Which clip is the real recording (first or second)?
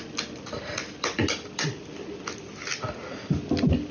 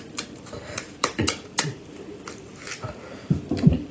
first